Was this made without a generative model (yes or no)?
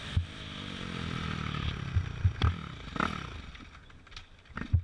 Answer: yes